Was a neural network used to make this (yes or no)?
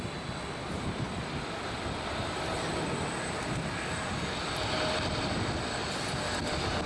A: no